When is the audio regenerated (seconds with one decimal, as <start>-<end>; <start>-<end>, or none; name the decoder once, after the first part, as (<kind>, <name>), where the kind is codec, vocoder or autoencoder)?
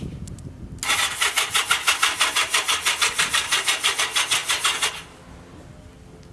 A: 2.4-4.0 (vocoder, BigVGAN v2)